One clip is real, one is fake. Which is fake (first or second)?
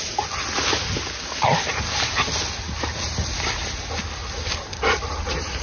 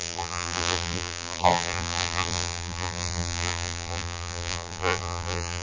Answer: second